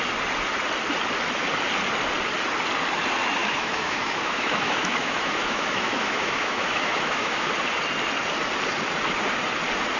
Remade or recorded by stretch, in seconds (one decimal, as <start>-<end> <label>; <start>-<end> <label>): 0.0-3.4 recorded; 3.4-7.5 remade; 7.5-10.0 recorded